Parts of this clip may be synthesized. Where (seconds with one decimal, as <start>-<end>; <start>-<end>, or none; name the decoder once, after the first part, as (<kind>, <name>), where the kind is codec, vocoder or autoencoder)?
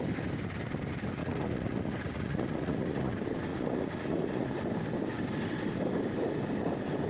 1.2-3.1 (vocoder, Vocos); 3.5-4.5